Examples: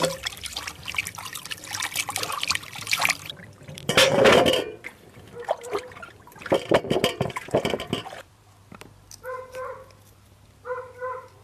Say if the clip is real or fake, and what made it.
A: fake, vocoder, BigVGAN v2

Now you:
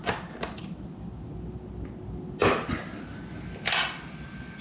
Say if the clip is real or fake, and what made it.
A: real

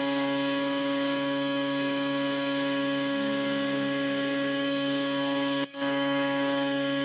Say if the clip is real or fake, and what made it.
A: fake, codec, DAC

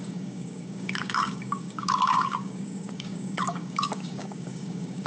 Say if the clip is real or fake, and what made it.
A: fake, codec, DAC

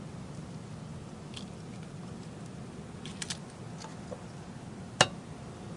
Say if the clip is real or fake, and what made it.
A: real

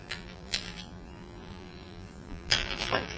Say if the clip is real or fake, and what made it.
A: fake, vocoder, BigVGAN v2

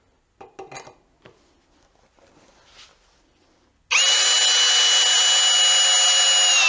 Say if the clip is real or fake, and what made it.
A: real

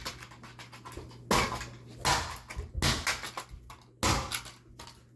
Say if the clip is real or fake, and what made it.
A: real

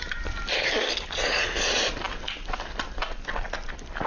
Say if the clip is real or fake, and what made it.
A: real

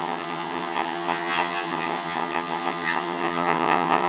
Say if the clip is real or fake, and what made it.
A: fake, vocoder, HiFi-GAN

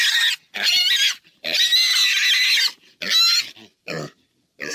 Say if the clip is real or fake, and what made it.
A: real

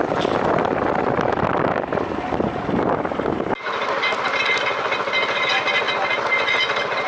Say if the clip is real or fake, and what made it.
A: real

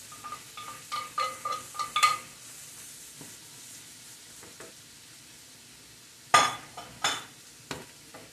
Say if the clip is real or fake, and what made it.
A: real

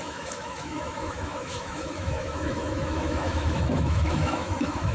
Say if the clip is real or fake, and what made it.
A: fake, autoencoder, DAC-VAE